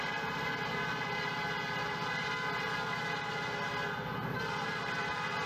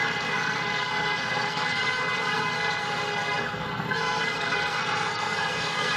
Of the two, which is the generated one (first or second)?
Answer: second